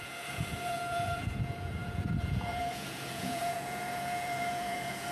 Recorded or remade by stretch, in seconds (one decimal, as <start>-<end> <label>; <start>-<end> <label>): 0.0-5.1 remade